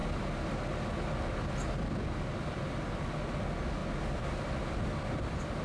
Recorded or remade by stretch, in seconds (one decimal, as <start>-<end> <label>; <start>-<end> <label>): 0.0-5.6 recorded